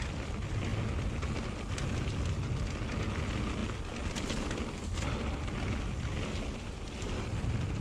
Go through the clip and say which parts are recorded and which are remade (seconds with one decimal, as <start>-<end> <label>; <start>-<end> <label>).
0.0-7.8 recorded